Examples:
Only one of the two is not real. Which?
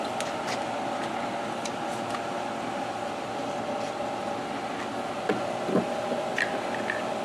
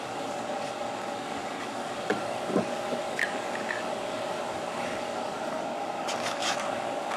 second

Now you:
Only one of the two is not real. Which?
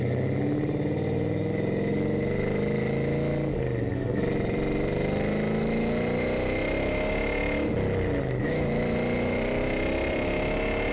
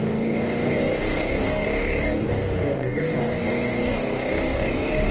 second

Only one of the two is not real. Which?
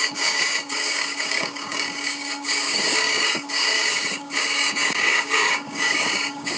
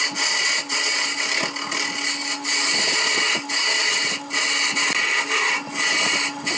first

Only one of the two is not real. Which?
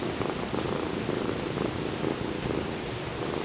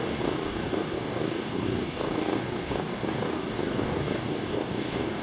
second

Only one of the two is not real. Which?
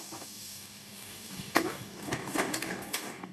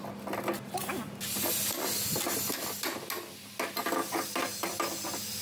first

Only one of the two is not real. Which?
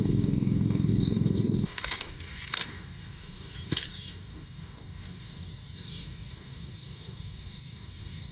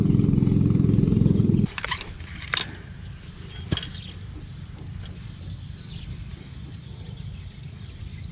first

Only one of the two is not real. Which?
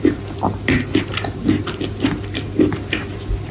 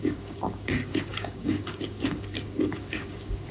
second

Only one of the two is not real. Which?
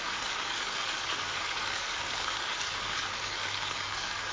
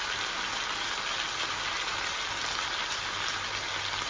first